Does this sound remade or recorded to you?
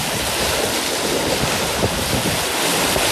recorded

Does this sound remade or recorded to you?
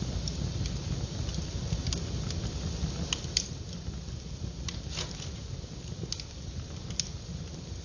recorded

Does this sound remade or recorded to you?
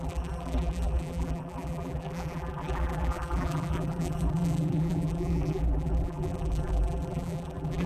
remade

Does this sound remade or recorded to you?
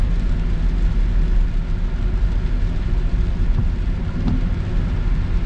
recorded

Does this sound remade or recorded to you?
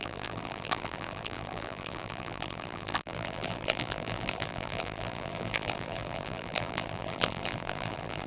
remade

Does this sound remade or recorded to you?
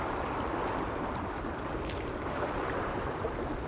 remade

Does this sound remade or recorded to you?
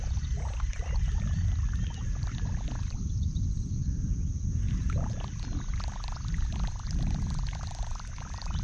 recorded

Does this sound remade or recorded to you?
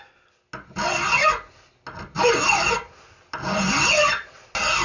recorded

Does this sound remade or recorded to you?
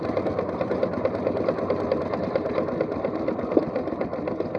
remade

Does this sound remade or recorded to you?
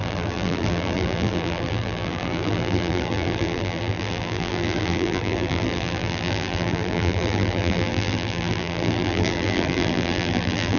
remade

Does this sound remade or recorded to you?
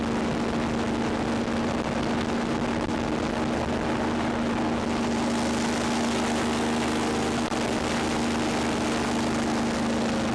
recorded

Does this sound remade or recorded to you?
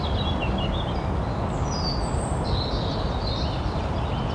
recorded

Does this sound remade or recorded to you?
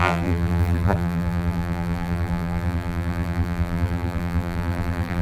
remade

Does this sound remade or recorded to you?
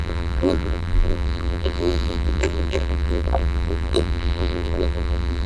remade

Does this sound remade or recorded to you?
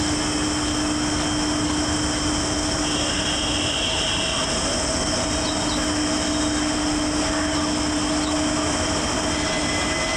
recorded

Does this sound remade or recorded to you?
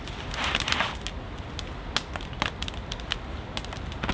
recorded